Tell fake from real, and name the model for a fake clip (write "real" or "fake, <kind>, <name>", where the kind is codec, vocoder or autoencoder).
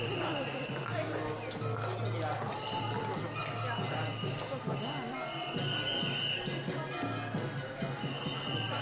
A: real